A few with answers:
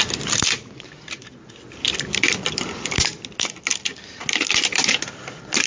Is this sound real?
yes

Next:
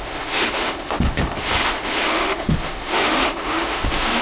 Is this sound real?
no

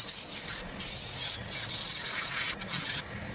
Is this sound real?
yes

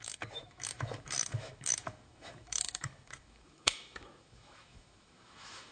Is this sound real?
no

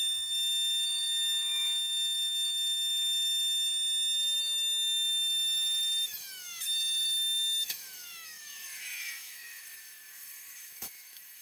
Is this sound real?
no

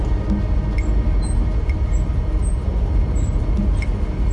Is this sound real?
yes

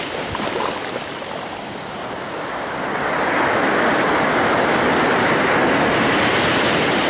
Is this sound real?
yes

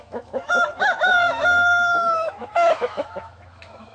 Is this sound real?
no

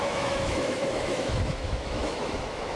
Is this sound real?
no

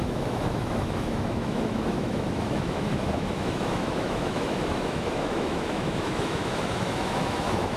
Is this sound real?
no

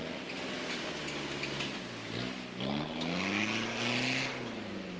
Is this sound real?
yes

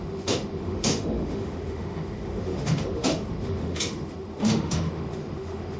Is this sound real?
no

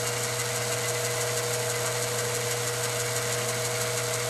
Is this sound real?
yes